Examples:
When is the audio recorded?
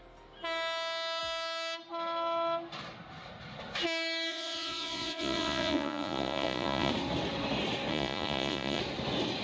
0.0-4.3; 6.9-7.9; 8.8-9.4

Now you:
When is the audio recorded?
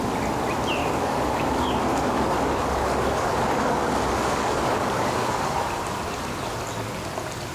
0.0-0.8; 5.3-7.5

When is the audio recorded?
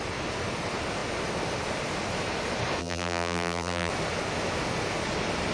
0.0-2.8; 3.9-5.5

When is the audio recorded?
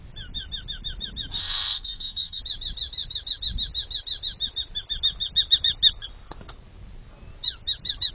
0.0-1.4; 2.4-8.1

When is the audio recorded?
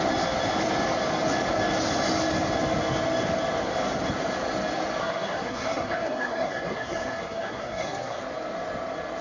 0.0-5.0; 8.2-9.2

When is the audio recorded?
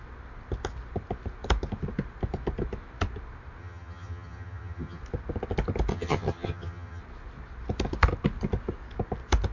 0.0-3.6; 5.0-5.9; 7.0-9.5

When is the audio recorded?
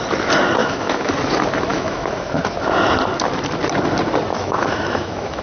0.0-0.6; 1.1-1.7; 2.4-4.3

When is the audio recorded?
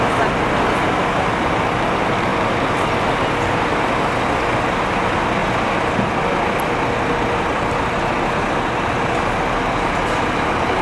0.0-10.8